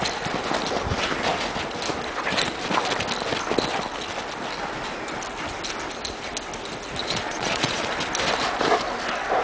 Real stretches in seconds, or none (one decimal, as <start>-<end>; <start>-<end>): 0.0-7.0; 7.9-9.4